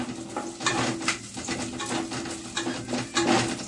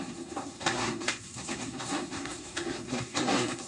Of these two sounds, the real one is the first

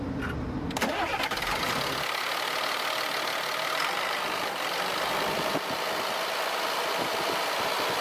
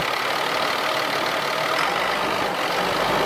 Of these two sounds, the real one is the second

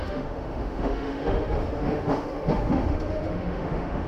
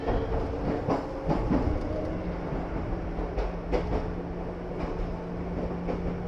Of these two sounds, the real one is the second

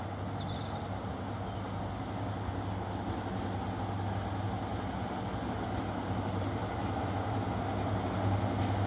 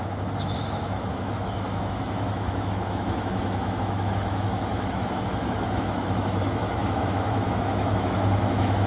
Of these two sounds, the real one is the first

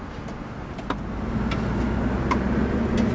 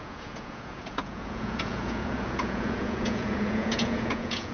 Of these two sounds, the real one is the first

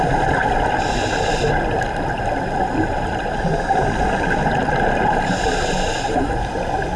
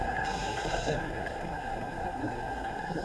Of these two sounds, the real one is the first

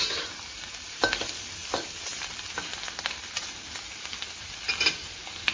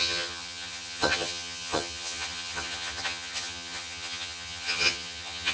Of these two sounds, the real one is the first